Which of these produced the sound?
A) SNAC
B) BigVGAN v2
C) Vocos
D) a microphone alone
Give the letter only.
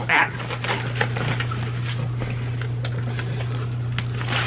D